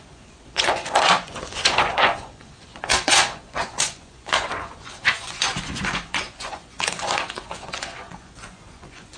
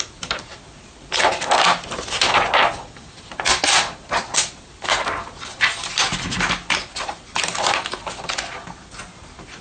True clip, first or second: second